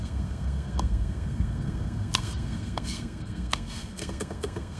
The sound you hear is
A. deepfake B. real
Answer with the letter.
A